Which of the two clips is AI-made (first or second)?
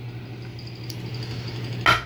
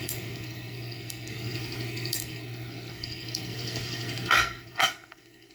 second